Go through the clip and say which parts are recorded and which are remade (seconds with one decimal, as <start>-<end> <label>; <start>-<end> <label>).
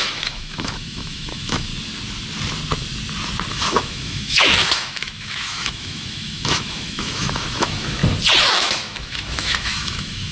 0.0-1.7 remade; 1.7-3.5 recorded; 3.5-8.0 remade; 8.0-8.5 recorded; 8.5-10.3 remade